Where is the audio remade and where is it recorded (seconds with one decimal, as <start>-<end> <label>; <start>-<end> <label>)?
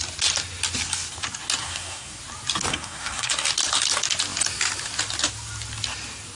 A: 0.0-1.6 recorded; 1.6-2.2 remade; 2.2-2.7 recorded; 2.7-3.3 remade; 3.3-6.3 recorded